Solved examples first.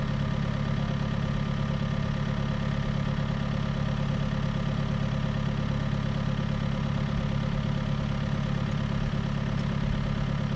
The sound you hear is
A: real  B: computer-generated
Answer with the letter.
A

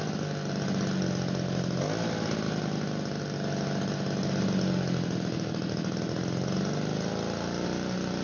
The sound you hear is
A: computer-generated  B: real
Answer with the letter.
B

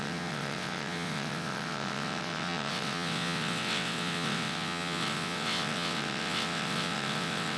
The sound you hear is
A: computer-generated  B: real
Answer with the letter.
A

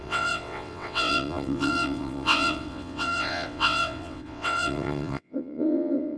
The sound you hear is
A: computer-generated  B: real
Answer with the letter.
A